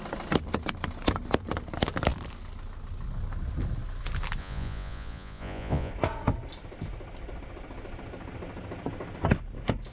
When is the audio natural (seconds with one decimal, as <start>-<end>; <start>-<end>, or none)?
0.0-4.4; 5.9-9.9